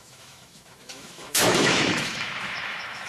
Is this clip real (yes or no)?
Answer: no